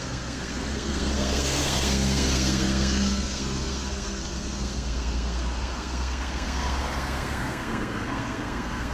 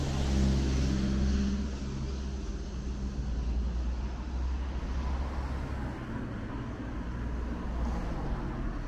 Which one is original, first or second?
second